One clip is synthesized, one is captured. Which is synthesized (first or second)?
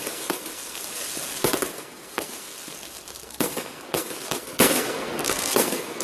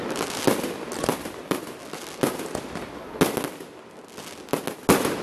first